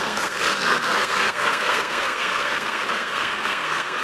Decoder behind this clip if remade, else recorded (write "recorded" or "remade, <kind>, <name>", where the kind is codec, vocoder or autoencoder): remade, codec, SNAC